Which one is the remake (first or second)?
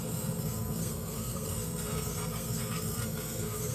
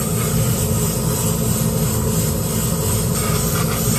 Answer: first